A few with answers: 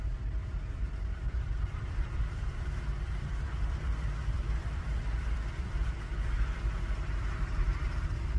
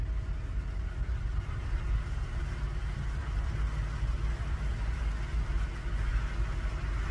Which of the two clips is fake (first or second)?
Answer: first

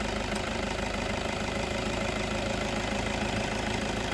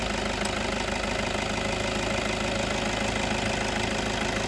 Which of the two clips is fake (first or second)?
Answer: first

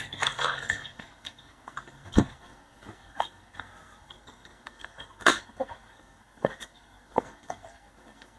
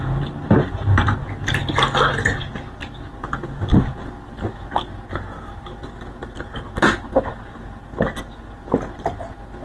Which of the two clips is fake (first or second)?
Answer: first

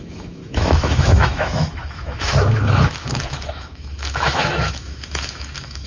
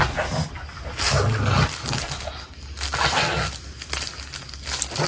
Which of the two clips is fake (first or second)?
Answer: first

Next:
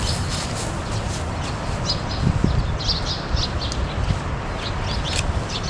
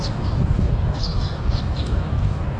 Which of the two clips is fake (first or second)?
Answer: second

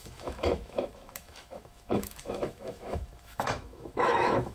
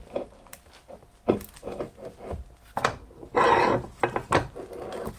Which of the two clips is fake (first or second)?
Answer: first